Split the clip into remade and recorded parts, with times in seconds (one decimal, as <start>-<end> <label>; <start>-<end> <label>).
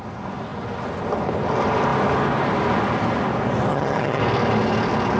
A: 0.0-3.7 recorded; 3.7-4.2 remade; 4.2-5.2 recorded